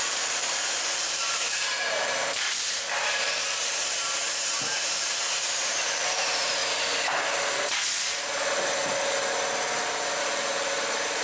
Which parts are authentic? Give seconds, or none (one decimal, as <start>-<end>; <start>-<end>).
6.6-10.2